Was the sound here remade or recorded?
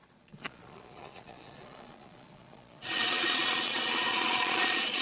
remade